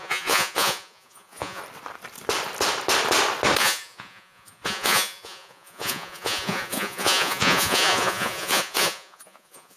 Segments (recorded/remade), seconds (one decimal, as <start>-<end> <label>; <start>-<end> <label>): 0.0-1.6 remade; 1.6-3.6 recorded; 3.6-9.8 remade